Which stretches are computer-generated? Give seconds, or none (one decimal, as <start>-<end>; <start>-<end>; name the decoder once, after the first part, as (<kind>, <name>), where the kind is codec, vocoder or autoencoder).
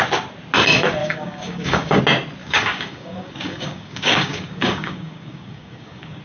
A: 1.0-2.0 (codec, DAC); 2.4-6.2